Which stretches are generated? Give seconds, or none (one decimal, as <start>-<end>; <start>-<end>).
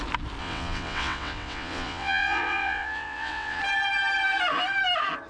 0.4-3.6